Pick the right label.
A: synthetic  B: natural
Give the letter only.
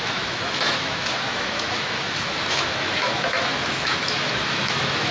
A